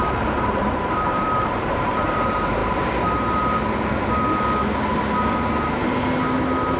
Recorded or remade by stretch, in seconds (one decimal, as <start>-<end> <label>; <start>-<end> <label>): 0.0-2.6 remade; 2.6-6.8 recorded